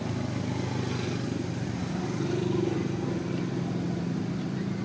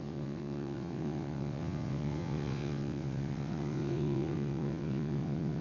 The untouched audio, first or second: first